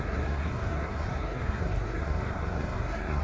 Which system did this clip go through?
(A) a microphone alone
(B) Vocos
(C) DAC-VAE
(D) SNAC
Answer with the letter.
D